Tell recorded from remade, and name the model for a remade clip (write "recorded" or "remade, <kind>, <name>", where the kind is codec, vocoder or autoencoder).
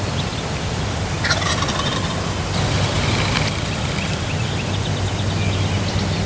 recorded